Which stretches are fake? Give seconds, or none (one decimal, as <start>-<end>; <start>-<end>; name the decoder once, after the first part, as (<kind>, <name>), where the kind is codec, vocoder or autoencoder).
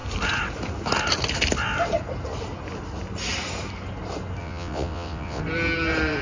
4.4-5.4 (vocoder, WaveNeXt)